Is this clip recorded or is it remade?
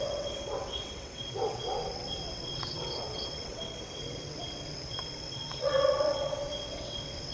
remade